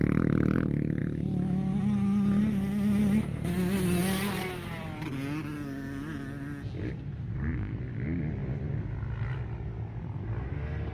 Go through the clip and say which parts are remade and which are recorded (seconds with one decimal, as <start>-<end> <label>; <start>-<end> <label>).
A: 0.0-7.3 recorded; 7.3-7.8 remade; 7.8-10.9 recorded